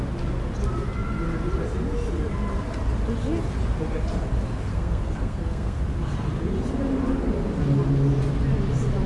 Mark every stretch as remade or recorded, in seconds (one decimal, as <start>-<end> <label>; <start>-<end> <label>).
0.0-4.7 recorded; 4.7-5.8 remade; 5.8-9.1 recorded